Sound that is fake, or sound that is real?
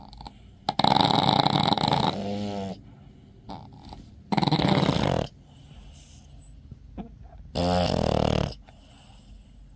real